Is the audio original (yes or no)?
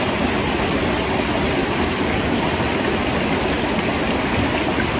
yes